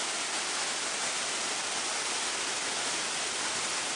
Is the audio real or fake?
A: real